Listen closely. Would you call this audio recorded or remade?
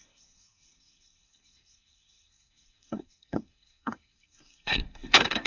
remade